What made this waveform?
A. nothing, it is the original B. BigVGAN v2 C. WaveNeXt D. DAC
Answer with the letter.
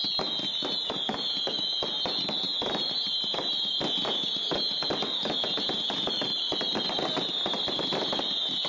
A